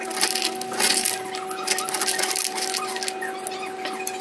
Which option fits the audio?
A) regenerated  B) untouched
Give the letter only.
B